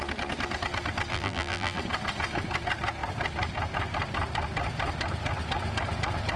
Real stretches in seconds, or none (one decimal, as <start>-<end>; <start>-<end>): 0.0-1.1; 1.8-6.4